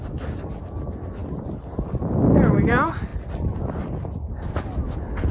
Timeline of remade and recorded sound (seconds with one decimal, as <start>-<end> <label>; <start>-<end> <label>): 0.0-5.3 recorded